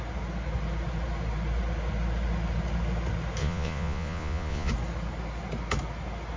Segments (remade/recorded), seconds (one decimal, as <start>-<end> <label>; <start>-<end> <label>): 0.0-3.4 recorded; 3.4-4.7 remade; 4.7-6.4 recorded